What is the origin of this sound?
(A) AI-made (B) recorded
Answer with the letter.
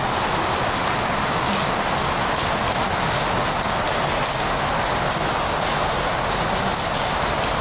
B